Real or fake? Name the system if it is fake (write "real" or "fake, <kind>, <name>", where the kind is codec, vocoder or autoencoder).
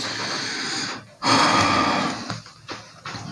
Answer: real